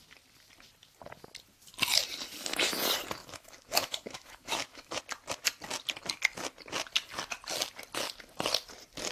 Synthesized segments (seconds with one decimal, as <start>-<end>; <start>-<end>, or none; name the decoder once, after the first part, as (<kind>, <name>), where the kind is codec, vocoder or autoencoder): 3.2-5.0 (autoencoder, DAC-VAE)